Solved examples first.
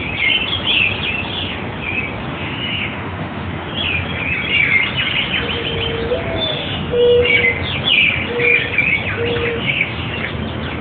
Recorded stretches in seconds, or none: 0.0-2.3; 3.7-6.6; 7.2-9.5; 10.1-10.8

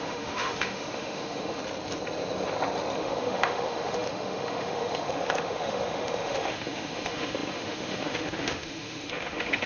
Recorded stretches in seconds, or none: 1.6-3.0

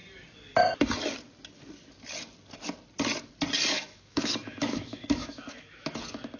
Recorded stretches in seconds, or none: 0.0-3.7; 6.0-6.4

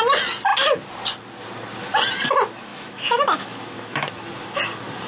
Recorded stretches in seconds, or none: 0.0-2.7; 4.1-5.1